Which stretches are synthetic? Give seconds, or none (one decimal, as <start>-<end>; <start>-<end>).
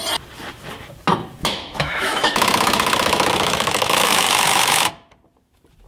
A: 1.4-4.9